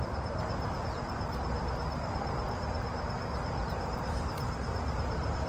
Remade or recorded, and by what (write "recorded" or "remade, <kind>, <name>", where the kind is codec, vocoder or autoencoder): remade, vocoder, BigVGAN v2